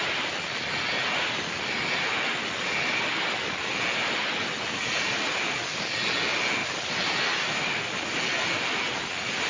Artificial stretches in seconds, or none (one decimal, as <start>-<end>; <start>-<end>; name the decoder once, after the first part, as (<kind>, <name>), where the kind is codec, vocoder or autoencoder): 6.6-8.2 (vocoder, BigVGAN v2)